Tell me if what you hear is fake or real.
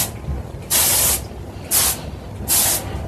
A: real